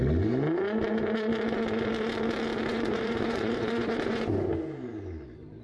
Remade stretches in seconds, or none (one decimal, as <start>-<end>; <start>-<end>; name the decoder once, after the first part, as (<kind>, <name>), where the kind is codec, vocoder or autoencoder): 2.7-4.3 (vocoder, Vocos)